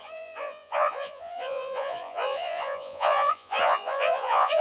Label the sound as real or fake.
fake